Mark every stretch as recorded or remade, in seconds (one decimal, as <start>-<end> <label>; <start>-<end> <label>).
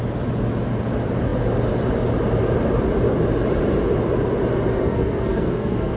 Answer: 0.0-4.8 recorded; 4.8-6.0 remade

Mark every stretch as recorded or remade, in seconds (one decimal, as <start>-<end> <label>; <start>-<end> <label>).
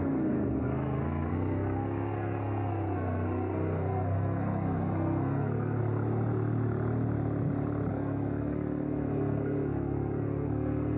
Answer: 0.0-5.8 remade; 5.8-7.9 recorded; 7.9-11.0 remade